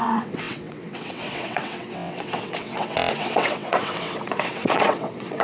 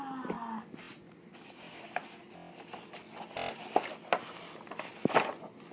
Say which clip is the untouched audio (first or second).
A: second